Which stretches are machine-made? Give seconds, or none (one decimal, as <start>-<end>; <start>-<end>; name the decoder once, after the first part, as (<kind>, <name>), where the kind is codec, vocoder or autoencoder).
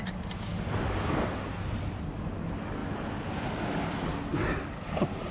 none